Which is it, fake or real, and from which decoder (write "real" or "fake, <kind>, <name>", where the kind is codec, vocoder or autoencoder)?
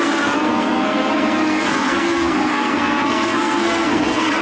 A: fake, codec, SNAC